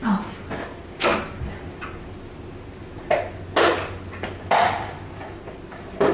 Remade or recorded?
recorded